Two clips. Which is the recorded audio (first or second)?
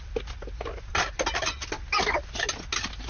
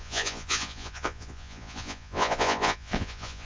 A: first